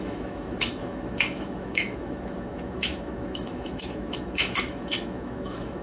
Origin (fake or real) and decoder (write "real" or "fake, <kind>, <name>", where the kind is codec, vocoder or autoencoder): fake, autoencoder, DAC-VAE